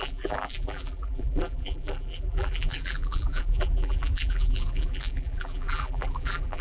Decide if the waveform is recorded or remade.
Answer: remade